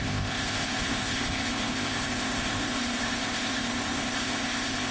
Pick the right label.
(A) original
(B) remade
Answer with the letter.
B